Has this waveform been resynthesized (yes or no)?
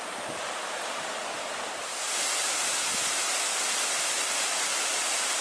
no